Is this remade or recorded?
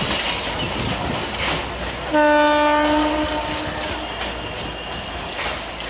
recorded